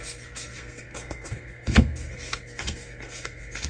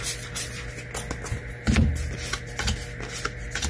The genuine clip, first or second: second